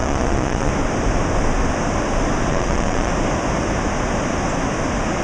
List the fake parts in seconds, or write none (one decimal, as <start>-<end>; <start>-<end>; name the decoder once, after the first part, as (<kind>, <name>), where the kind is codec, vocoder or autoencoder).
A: 0.0-0.7 (vocoder, Vocos); 2.5-3.1

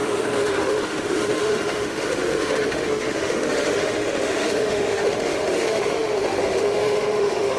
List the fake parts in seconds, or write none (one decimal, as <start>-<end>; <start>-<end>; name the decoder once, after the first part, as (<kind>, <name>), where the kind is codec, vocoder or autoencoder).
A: 0.0-7.6 (autoencoder, DAC-VAE)